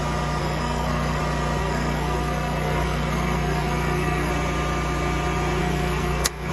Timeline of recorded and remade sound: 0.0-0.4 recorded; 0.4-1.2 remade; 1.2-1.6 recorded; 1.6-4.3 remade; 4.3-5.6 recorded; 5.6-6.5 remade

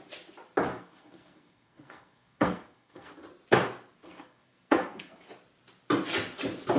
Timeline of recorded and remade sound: 0.0-0.7 recorded; 0.7-3.1 remade; 3.1-4.0 recorded; 4.0-5.2 remade; 5.2-6.8 recorded

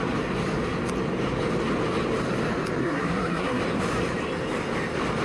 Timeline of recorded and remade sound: 0.0-2.8 recorded; 2.8-3.6 remade; 3.6-5.2 recorded

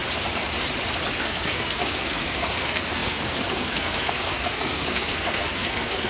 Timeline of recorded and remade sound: 0.0-1.2 recorded; 1.2-6.1 remade

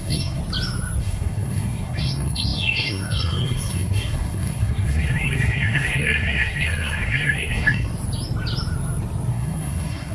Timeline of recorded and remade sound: 0.0-0.4 remade; 0.4-1.0 recorded; 1.0-7.9 remade; 7.9-9.3 recorded; 9.3-10.1 remade

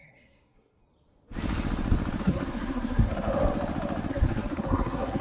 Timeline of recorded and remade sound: 0.0-0.8 remade; 0.8-2.2 recorded; 2.2-3.3 remade; 3.3-4.1 recorded; 4.1-5.2 remade

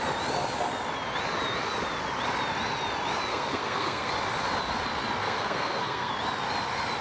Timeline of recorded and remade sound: 0.0-3.3 recorded; 3.3-4.1 remade; 4.1-5.2 recorded; 5.2-6.1 remade; 6.1-7.0 recorded